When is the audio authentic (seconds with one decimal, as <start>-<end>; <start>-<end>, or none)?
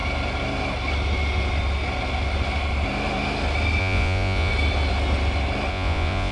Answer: 0.0-3.8; 4.5-5.7